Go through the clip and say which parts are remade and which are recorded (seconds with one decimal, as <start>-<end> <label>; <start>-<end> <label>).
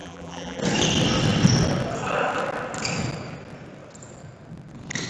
0.0-0.6 remade; 0.6-5.1 recorded